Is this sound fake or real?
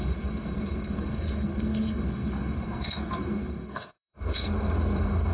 fake